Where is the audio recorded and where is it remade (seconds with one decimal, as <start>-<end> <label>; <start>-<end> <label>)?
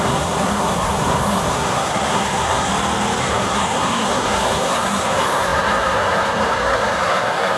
0.0-2.7 remade; 2.7-3.2 recorded; 3.2-7.6 remade